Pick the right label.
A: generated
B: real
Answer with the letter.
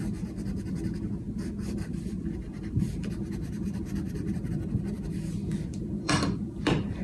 A